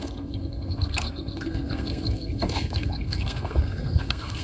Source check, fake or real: fake